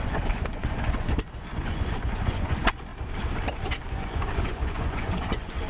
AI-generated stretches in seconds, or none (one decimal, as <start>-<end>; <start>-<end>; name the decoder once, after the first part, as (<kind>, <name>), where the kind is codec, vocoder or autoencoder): 0.0-2.9 (vocoder, Vocos); 3.8-5.7